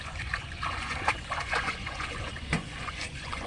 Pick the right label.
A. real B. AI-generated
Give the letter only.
B